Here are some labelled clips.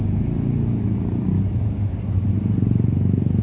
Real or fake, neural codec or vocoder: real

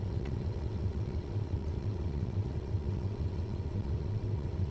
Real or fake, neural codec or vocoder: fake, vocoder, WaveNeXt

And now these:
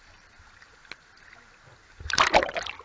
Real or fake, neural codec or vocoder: real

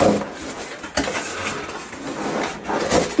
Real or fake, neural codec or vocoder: real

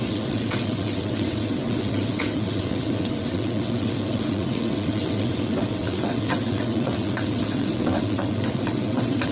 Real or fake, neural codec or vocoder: fake, vocoder, WaveNeXt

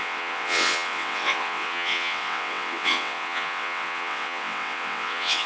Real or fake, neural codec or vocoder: fake, vocoder, WaveNeXt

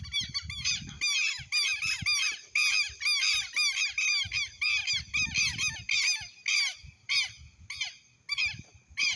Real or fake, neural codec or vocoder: real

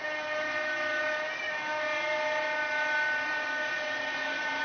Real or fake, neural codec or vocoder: real